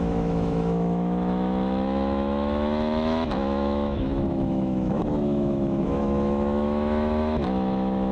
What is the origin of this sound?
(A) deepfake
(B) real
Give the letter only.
A